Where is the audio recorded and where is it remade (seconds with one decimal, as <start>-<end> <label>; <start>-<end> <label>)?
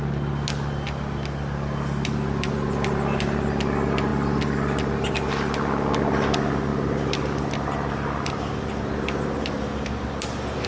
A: 0.0-10.7 recorded